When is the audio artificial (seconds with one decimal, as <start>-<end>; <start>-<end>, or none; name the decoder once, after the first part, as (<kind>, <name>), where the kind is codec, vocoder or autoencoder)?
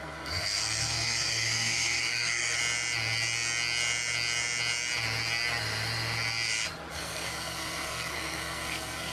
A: 0.0-2.6 (codec, SNAC); 6.9-9.1